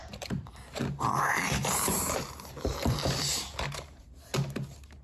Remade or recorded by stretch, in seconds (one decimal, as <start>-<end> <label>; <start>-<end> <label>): 0.0-1.2 remade; 1.2-1.6 recorded; 1.6-4.1 remade; 4.1-5.0 recorded